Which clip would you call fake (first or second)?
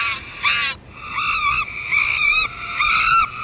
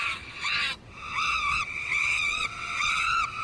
second